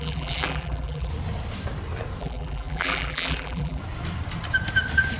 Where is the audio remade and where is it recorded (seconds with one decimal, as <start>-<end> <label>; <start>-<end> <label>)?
0.0-1.1 remade; 1.1-2.2 recorded; 2.2-3.8 remade; 3.8-5.2 recorded